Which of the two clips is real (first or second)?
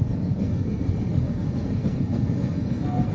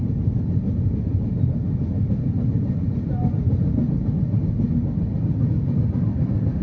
second